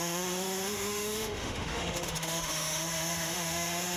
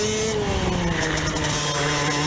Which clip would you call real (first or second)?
second